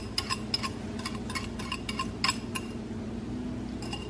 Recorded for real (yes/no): yes